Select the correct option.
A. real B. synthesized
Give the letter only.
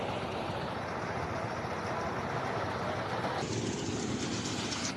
A